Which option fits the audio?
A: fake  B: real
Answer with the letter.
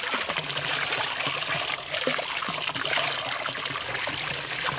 B